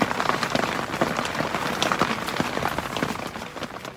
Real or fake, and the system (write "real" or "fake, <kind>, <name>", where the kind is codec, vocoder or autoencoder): real